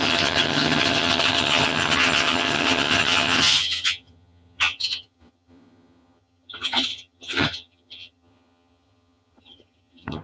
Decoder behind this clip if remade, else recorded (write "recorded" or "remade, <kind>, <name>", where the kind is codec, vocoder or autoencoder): remade, vocoder, HiFi-GAN